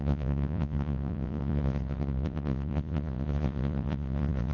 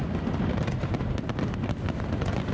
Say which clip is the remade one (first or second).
first